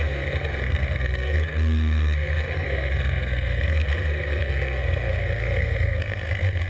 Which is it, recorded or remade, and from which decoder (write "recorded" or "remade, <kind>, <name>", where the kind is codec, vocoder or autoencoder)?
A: remade, codec, SNAC